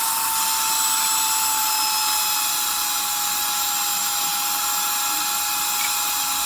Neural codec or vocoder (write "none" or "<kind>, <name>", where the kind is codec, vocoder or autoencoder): none